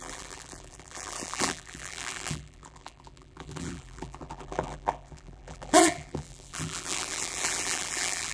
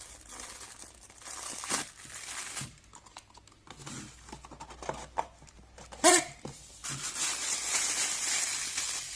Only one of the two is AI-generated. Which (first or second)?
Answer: first